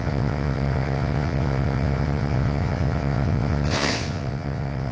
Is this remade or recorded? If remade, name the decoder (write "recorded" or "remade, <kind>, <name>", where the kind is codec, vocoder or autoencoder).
remade, vocoder, WaveNeXt